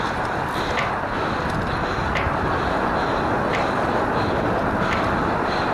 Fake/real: real